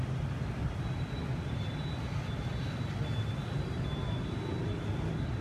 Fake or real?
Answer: real